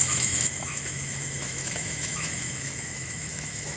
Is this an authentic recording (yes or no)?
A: no